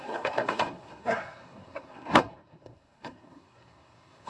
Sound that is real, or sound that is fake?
fake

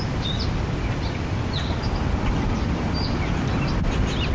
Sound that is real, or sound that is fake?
real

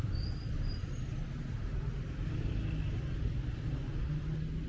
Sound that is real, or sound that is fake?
real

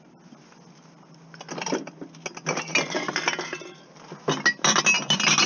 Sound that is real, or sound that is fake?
real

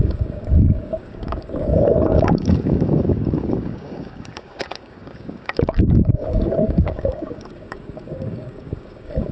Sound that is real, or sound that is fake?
fake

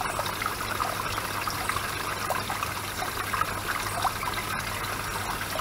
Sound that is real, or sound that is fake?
real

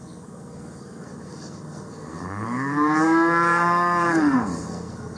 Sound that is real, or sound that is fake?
fake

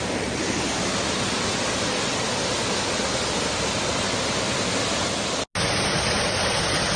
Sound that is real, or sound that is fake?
real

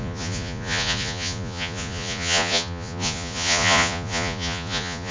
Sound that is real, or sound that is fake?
fake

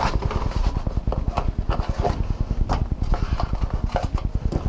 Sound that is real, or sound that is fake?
real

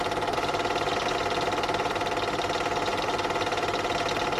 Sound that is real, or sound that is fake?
real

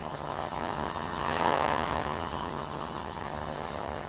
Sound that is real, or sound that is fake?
fake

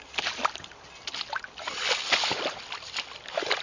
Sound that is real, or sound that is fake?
real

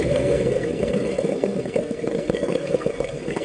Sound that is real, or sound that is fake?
fake